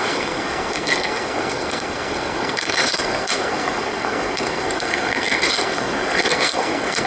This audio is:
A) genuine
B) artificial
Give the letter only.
B